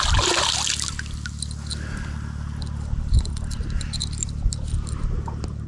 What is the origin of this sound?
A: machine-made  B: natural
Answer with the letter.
B